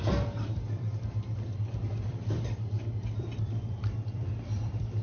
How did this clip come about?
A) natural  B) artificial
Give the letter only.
B